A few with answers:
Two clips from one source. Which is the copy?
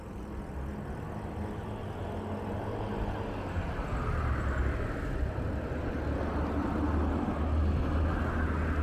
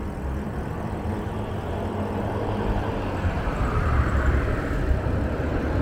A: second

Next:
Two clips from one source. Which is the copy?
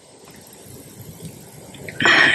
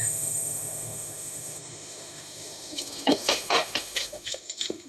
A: second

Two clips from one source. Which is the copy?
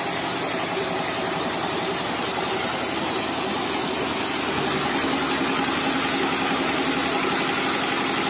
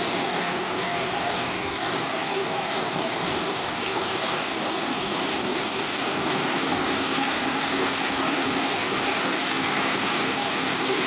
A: second